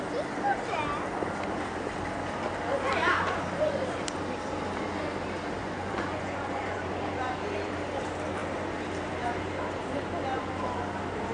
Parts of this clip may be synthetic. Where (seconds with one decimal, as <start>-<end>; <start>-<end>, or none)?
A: 5.6-6.8